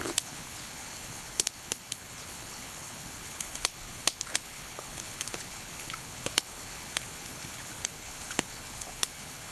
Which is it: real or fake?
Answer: fake